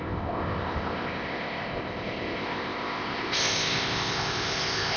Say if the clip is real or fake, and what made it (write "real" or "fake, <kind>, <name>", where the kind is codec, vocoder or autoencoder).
fake, codec, ZipCodec